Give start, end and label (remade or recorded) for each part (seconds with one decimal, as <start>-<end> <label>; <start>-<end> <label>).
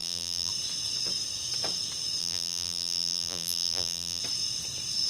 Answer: 0.0-0.5 remade; 0.5-2.2 recorded; 2.2-4.2 remade; 4.2-5.1 recorded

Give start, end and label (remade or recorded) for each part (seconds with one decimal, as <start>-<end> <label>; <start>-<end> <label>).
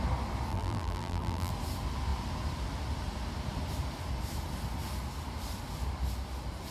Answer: 0.0-0.5 recorded; 0.5-1.5 remade; 1.5-6.7 recorded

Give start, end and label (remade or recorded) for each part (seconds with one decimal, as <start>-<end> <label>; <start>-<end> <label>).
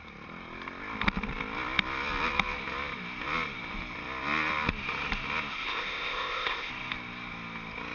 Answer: 0.0-5.5 recorded; 5.5-6.7 remade; 6.7-7.9 recorded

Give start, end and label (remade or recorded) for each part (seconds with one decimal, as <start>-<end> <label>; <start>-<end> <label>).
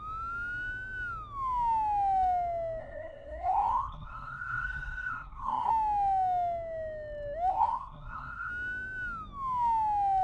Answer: 0.0-2.8 recorded; 2.8-5.7 remade; 5.7-7.5 recorded; 7.5-8.5 remade; 8.5-10.2 recorded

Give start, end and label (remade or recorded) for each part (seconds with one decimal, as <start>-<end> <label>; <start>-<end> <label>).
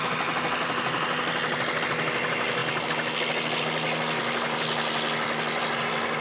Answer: 0.0-6.2 recorded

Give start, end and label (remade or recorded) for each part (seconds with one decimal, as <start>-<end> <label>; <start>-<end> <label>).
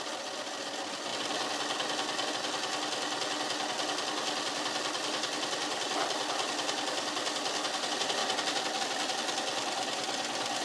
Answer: 0.0-10.6 recorded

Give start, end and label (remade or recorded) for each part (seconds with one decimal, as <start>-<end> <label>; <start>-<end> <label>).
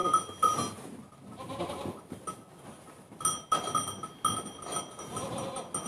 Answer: 0.0-5.9 recorded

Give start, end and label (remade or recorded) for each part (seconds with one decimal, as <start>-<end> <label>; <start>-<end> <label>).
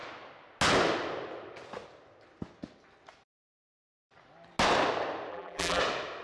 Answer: 0.0-5.3 recorded; 5.3-5.8 remade; 5.8-6.2 recorded